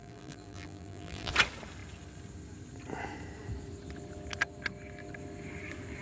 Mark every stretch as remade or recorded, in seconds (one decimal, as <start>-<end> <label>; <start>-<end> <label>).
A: 0.0-1.3 remade; 1.3-6.0 recorded